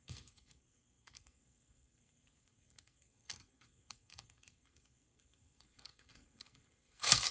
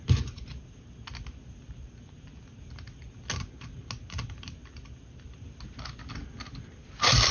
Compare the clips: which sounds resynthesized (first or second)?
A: first